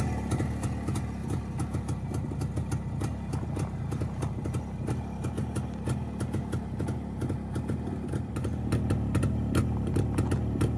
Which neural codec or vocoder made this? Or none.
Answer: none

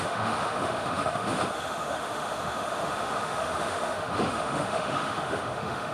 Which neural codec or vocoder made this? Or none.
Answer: autoencoder, DAC-VAE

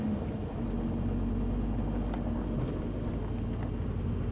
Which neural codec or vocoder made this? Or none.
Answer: none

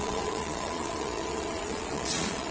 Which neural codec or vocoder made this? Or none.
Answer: vocoder, Vocos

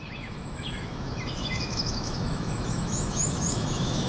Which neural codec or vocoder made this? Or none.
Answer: autoencoder, DAC-VAE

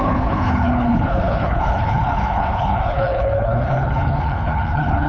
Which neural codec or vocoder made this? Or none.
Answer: codec, HILCodec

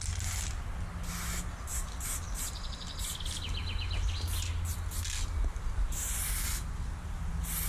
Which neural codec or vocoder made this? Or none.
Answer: none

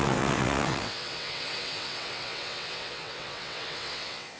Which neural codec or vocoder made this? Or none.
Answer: vocoder, WaveNeXt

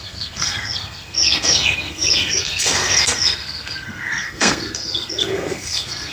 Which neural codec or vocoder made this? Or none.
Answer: codec, SNAC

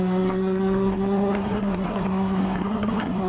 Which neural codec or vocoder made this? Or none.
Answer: codec, SNAC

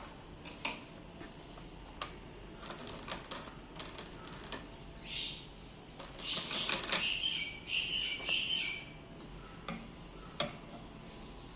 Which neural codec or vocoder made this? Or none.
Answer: none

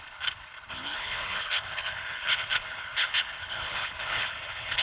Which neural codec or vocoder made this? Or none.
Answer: codec, HILCodec